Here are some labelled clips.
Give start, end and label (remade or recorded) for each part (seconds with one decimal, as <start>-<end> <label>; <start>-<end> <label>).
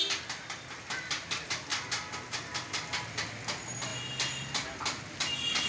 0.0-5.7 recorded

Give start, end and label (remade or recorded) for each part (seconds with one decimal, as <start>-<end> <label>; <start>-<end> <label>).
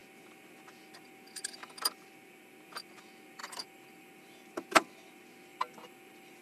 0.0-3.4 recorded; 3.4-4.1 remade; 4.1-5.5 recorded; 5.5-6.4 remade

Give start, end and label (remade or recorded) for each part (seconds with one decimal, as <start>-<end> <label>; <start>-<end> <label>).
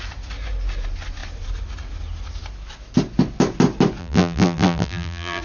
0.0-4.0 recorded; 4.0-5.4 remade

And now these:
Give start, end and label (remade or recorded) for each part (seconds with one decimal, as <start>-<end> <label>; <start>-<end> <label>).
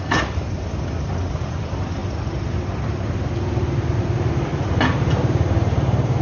0.0-2.0 remade; 2.0-4.7 recorded; 4.7-6.2 remade